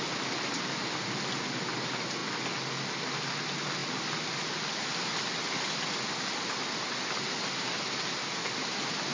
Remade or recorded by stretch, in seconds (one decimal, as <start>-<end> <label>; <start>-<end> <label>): 0.0-9.1 recorded